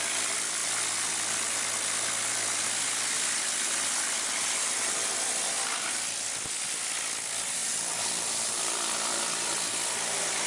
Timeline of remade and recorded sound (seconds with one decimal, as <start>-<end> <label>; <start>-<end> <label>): 0.0-7.6 recorded; 7.6-9.2 remade; 9.2-10.5 recorded